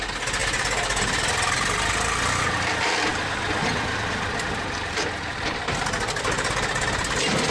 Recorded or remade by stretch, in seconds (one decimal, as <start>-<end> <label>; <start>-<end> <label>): 0.0-7.5 recorded